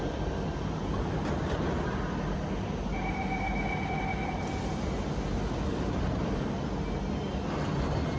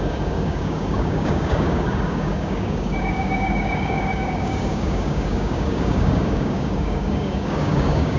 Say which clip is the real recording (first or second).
first